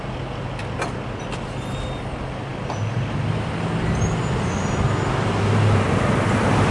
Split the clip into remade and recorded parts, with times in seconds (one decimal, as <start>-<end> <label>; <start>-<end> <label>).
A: 0.0-6.7 recorded